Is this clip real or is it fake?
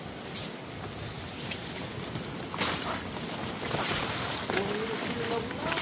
real